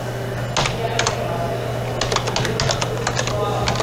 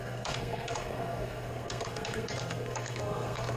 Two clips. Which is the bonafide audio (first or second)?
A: first